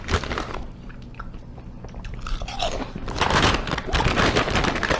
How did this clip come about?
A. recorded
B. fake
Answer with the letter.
A